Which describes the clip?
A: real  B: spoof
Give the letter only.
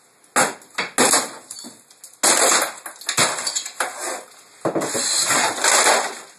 A